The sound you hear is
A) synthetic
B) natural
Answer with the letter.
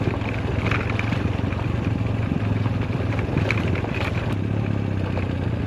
B